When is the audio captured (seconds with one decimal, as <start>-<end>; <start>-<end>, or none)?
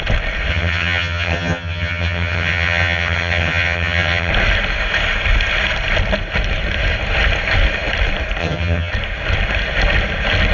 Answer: 0.0-0.5; 4.3-8.4; 8.9-10.5